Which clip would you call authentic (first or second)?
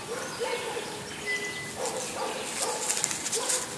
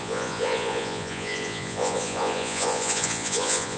first